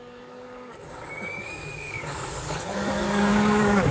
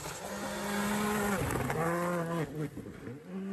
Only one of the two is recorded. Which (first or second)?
second